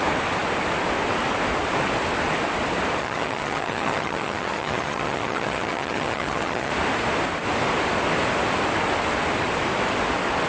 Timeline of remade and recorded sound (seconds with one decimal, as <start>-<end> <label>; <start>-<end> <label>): 0.0-3.0 recorded; 3.0-6.7 remade; 6.7-10.5 recorded